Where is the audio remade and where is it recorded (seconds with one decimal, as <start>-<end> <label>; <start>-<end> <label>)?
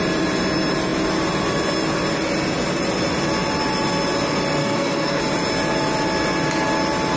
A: 0.0-4.6 recorded; 4.6-5.2 remade; 5.2-7.2 recorded